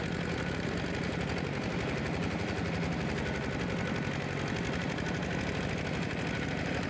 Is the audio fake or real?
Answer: real